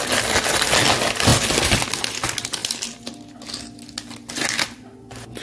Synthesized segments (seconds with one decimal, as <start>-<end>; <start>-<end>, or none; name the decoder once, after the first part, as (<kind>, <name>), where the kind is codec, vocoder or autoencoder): none